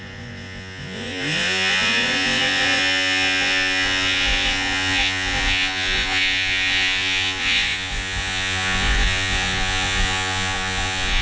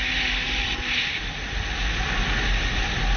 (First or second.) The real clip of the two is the second